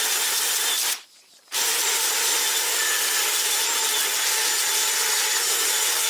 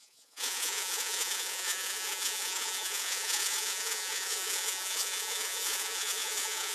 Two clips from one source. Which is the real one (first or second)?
first